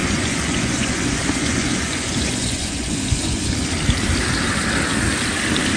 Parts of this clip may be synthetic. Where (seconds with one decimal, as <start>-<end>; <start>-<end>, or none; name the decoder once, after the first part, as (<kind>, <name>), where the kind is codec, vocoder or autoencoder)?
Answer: 0.0-3.5 (vocoder, Vocos)